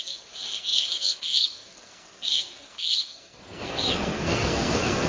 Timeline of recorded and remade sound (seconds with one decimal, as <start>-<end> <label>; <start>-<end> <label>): 0.0-5.1 remade